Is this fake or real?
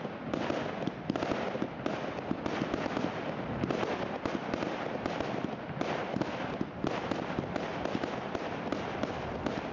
real